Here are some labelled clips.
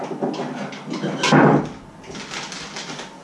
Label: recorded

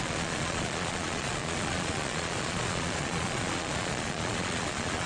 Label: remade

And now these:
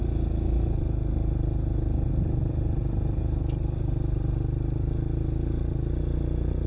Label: recorded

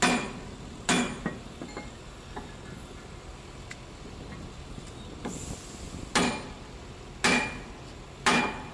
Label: recorded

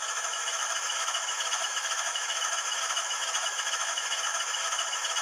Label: remade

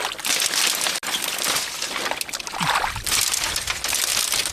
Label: recorded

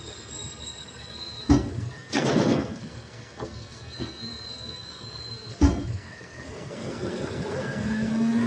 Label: remade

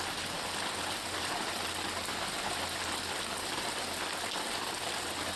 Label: recorded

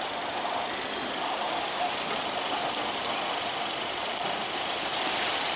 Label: recorded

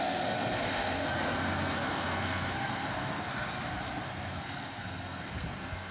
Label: remade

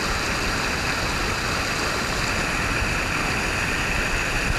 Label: recorded